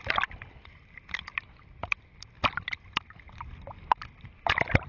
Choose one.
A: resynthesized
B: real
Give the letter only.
B